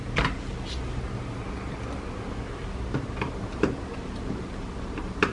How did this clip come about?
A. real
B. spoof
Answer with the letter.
A